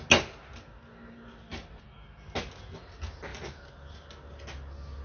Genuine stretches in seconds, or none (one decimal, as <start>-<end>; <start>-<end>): 0.0-5.0